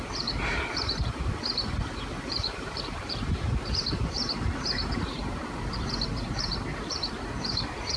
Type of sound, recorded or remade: remade